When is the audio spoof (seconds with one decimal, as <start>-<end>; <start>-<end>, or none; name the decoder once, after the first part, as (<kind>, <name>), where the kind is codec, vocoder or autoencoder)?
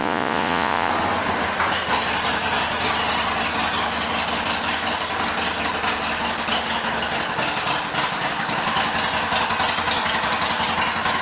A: 0.0-0.9 (vocoder, Vocos)